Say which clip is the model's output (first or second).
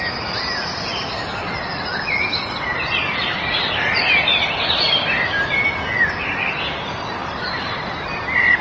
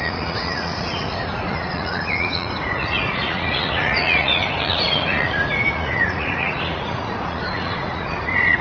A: second